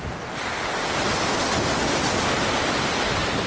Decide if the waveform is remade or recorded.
recorded